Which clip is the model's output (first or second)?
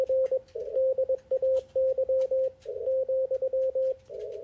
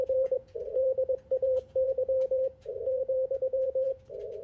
second